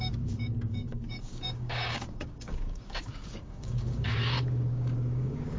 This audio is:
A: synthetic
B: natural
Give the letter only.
A